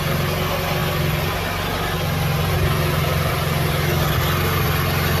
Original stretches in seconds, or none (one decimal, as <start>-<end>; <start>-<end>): 0.0-5.2